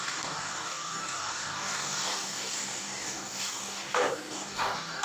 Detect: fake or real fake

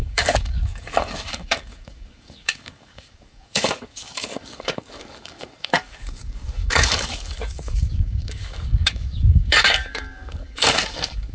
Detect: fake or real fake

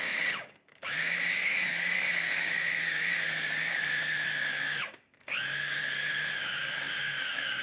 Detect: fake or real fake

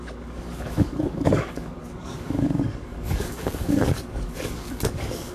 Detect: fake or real fake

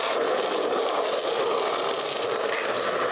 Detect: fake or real real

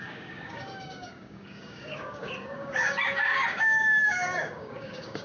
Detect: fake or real fake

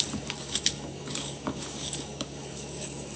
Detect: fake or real fake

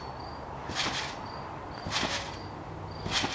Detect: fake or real real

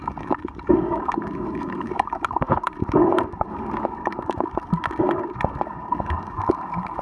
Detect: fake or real fake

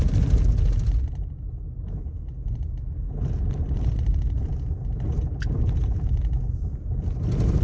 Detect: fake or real real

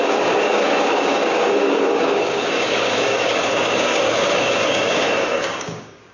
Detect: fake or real fake